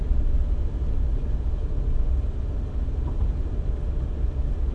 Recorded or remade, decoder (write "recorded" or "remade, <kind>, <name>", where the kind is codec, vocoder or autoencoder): recorded